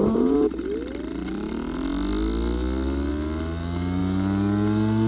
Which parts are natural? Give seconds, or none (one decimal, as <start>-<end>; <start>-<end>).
0.0-5.1